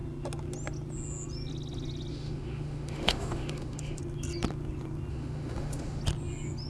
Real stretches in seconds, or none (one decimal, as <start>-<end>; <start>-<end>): 0.0-2.1; 4.0-5.1; 6.0-6.7